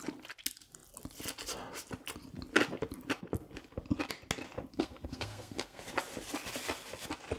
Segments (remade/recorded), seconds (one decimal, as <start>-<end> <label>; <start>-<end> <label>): 0.0-4.7 recorded; 4.7-5.8 remade; 5.8-7.4 recorded